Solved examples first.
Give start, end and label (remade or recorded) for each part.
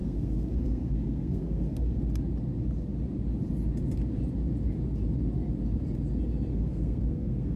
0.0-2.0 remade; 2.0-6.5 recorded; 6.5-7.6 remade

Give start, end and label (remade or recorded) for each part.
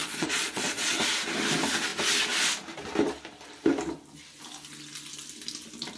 0.0-0.9 remade; 0.9-6.0 recorded